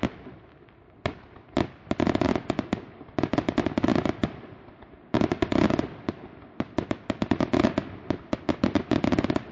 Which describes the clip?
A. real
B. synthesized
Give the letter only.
A